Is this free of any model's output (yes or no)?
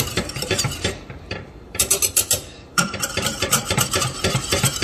no